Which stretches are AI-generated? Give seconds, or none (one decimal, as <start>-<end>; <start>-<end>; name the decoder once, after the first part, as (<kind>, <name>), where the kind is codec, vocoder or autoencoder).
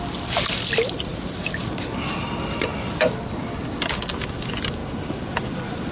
none